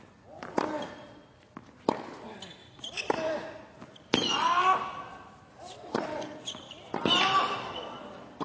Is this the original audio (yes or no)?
yes